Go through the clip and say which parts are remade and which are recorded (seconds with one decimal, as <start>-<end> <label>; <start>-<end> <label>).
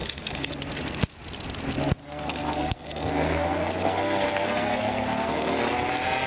0.0-0.5 remade; 0.5-2.0 recorded; 2.0-5.7 remade; 5.7-6.3 recorded